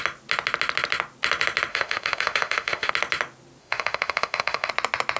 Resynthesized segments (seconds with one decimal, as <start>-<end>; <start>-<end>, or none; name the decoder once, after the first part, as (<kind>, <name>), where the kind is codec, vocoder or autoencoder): 1.7-2.9 (autoencoder, DAC-VAE); 3.6-4.7